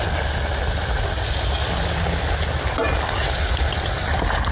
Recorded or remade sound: recorded